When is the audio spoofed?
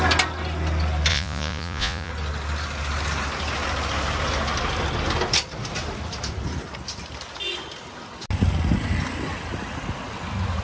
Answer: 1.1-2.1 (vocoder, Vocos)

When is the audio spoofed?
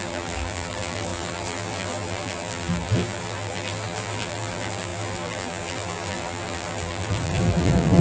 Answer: 0.0-8.0 (vocoder, BigVGAN v2)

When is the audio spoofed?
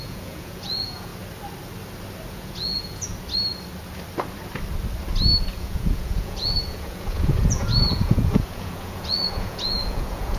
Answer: 0.0-1.1 (vocoder, Vocos); 2.3-3.1; 5.5-10.4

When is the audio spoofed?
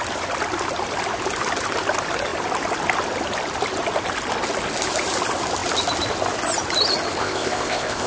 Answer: 7.2-8.1 (codec, ZipCodec)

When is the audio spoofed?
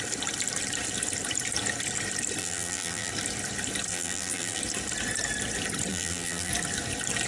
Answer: 2.4-3.1 (vocoder, BigVGAN v2); 3.9-4.6; 5.9-6.5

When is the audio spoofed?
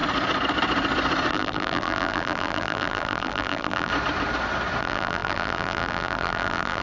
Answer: 1.3-3.9 (vocoder, BigVGAN v2); 4.8-6.8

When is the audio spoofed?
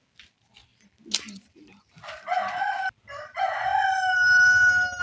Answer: none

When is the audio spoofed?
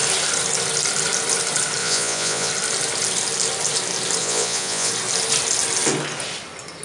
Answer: 1.8-2.5 (vocoder, Vocos); 4.2-4.9